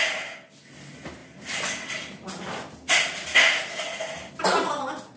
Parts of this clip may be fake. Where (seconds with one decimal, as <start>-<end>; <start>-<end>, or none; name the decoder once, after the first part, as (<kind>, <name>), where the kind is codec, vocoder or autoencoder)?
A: none